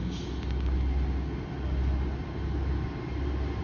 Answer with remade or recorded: recorded